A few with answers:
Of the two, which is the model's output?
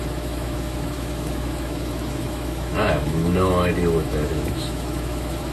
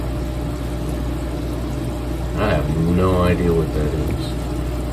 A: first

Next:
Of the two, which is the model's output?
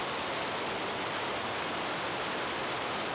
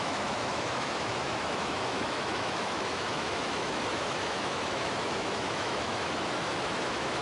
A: second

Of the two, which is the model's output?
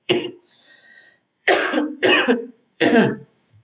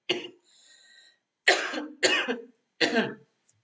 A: first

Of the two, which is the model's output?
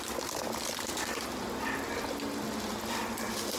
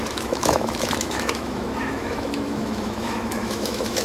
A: second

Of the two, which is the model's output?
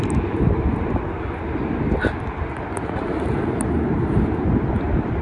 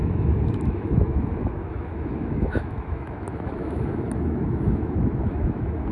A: second